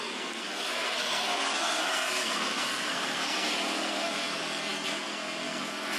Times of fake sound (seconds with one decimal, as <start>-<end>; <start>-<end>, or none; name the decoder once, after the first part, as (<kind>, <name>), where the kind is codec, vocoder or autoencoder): 0.0-6.0 (codec, SNAC)